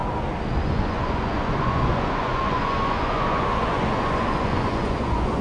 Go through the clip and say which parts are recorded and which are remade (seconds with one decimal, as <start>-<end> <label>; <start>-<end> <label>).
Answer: 0.0-0.6 recorded; 0.6-5.4 remade